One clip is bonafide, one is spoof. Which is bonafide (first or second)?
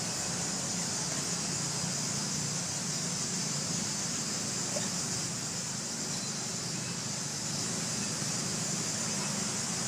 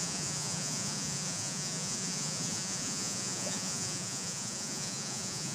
first